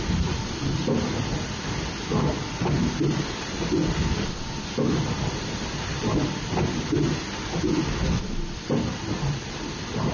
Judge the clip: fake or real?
real